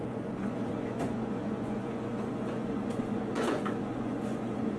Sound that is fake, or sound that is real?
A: fake